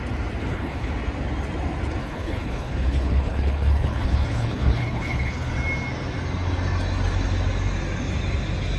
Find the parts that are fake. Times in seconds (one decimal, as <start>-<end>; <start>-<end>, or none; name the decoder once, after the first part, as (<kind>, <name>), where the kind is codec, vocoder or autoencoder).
0.4-0.9 (codec, HILCodec); 2.0-5.5